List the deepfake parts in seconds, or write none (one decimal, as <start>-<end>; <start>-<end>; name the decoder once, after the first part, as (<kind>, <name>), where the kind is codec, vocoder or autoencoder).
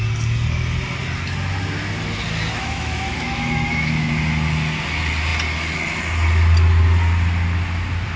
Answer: 2.5-4.1 (autoencoder, DAC-VAE)